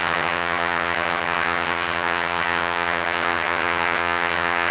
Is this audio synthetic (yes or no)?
yes